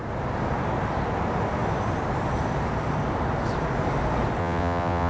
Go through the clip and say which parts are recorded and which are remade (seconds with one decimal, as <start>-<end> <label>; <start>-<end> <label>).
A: 0.0-4.4 recorded; 4.4-5.1 remade